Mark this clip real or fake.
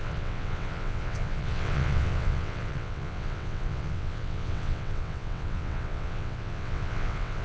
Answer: fake